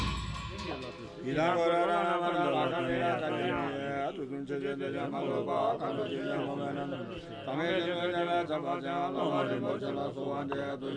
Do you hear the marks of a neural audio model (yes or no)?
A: no